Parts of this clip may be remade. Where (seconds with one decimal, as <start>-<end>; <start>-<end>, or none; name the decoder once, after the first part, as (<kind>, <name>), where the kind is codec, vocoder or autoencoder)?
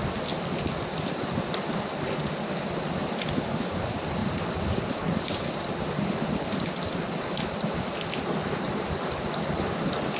none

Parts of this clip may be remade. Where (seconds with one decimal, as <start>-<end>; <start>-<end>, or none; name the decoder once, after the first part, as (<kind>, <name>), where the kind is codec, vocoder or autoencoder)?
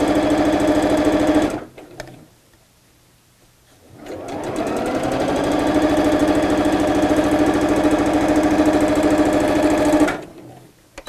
none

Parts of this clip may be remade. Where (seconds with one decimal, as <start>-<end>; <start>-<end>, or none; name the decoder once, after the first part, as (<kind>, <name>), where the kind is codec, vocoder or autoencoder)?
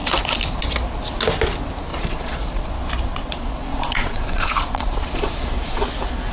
1.9-2.7 (vocoder, Vocos); 3.1-5.8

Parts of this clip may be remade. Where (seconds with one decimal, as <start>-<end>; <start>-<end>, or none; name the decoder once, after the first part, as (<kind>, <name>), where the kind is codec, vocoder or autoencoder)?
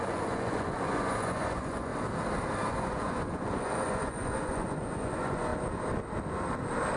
0.0-1.9 (vocoder, Vocos); 2.7-5.5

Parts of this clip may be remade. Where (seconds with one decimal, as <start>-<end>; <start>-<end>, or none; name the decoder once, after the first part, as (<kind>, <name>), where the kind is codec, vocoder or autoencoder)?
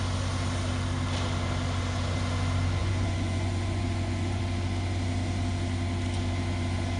2.8-4.4 (vocoder, Vocos)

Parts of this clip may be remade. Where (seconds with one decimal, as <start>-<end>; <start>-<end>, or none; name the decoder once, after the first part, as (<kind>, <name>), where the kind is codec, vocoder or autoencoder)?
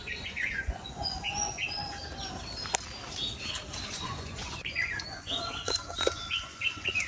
0.0-2.0 (vocoder, Vocos); 3.9-7.1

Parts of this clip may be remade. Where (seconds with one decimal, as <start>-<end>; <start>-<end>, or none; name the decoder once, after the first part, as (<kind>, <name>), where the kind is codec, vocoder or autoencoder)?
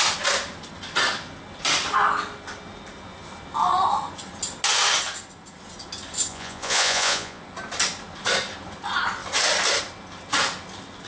6.3-7.4 (vocoder, Vocos)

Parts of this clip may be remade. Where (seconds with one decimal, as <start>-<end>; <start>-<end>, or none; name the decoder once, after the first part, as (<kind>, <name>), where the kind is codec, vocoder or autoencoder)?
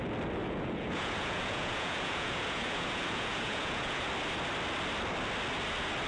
0.4-4.1 (vocoder, Vocos)